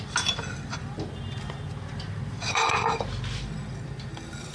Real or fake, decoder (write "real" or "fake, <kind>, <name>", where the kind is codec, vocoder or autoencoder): real